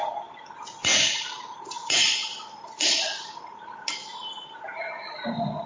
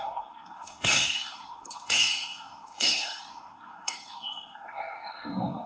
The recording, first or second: first